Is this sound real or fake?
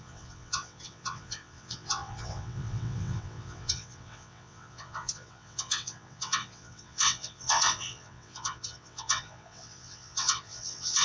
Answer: fake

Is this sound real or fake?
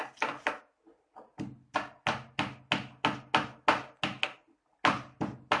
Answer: real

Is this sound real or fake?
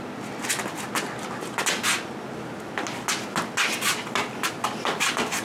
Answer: real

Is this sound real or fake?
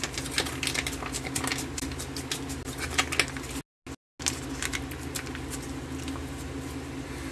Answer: real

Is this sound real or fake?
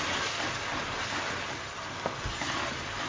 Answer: real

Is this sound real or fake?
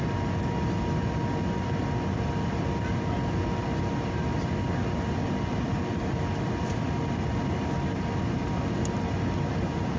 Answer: real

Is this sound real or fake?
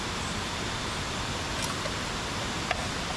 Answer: real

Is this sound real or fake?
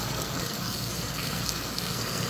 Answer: fake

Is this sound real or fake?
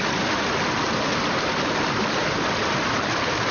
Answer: real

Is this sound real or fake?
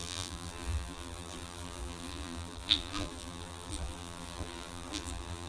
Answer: fake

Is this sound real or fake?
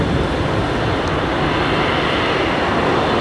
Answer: real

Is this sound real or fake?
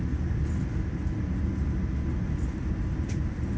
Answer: real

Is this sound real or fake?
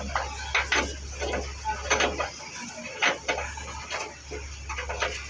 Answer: real